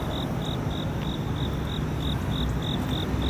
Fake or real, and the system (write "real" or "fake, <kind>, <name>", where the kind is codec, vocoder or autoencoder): real